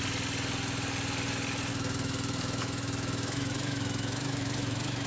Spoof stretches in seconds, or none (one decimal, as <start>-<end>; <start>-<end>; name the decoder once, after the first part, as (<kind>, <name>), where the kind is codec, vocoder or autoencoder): 1.7-5.1 (autoencoder, DAC-VAE)